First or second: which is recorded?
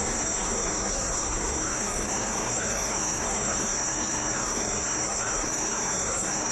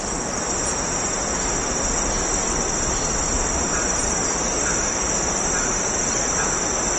second